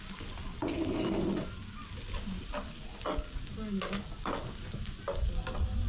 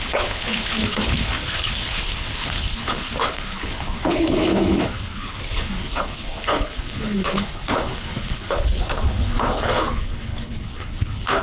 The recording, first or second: first